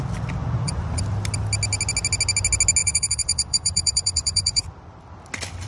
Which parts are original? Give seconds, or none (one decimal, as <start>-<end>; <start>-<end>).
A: 0.0-0.4; 1.0-2.8; 4.6-5.7